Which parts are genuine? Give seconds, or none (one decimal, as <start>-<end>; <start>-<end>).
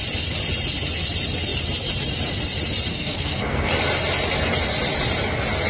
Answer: 0.0-2.9; 3.7-5.7